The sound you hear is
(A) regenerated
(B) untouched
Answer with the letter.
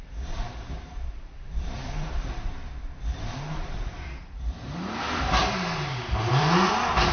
A